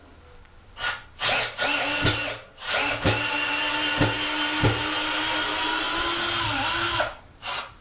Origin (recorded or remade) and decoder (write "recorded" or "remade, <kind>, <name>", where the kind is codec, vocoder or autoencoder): recorded